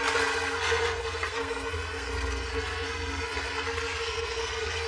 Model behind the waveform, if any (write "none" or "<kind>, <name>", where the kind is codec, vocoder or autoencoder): codec, SNAC